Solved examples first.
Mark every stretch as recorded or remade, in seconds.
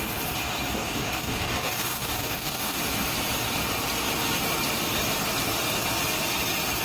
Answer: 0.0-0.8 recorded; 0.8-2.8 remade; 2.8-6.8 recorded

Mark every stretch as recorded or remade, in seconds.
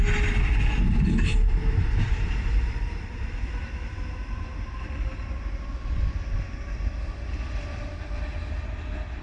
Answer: 0.0-1.3 recorded; 1.3-3.5 remade; 3.5-9.2 recorded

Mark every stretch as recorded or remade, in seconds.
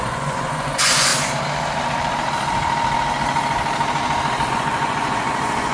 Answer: 0.0-1.1 remade; 1.1-4.5 recorded; 4.5-5.7 remade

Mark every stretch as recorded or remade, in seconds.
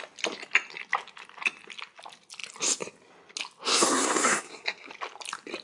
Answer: 0.0-3.7 recorded; 3.7-4.9 remade; 4.9-5.6 recorded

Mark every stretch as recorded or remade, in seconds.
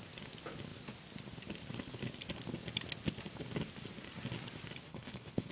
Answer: 0.0-4.9 recorded; 4.9-5.5 remade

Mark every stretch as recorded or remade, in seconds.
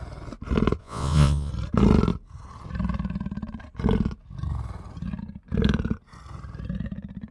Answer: 0.0-0.8 recorded; 0.8-1.5 remade; 1.5-7.3 recorded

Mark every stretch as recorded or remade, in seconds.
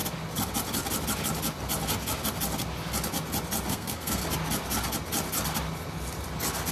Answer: 0.0-3.7 recorded; 3.7-4.2 remade; 4.2-6.7 recorded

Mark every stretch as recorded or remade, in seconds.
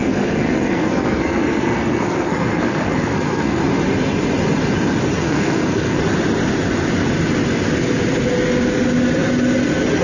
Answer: 0.0-3.6 remade; 3.6-5.2 recorded; 5.2-6.0 remade; 6.0-10.0 recorded